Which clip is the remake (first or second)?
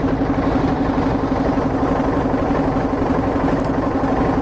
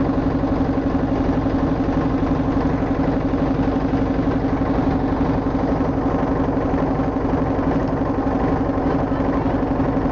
first